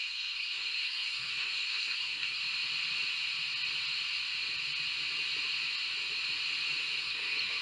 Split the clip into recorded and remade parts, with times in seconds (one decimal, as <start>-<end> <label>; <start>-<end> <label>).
0.0-2.4 remade; 2.4-7.0 recorded; 7.0-7.6 remade